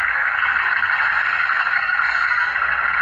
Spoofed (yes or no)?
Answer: yes